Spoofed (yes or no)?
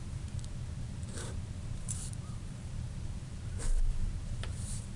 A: yes